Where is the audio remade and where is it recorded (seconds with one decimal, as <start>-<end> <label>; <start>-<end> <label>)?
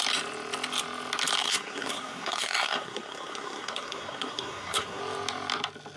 0.0-1.4 recorded; 1.4-5.0 remade; 5.0-6.0 recorded